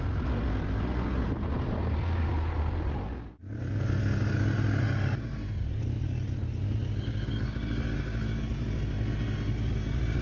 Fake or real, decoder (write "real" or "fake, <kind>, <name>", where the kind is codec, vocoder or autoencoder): real